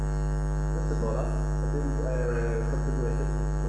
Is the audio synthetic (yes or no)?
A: no